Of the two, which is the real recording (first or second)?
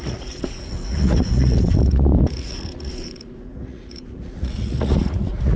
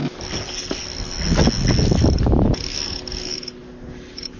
second